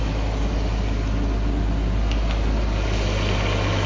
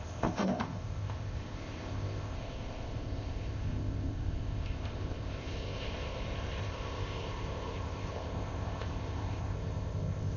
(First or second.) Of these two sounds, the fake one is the second